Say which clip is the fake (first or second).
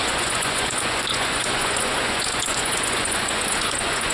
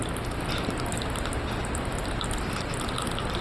first